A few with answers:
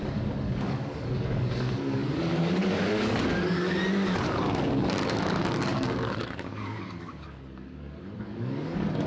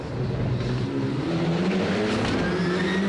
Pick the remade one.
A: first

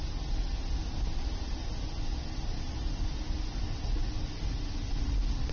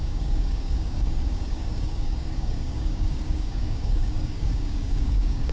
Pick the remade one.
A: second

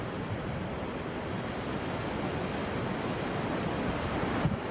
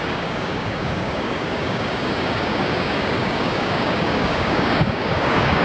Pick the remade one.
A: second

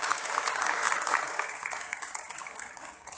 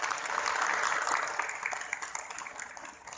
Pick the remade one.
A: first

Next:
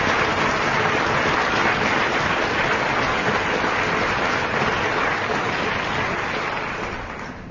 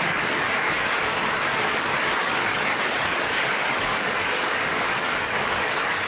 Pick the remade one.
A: second